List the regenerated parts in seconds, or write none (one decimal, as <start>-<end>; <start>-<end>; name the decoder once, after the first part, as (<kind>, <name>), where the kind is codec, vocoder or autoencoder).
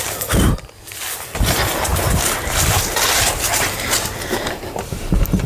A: 1.9-5.5 (vocoder, BigVGAN v2)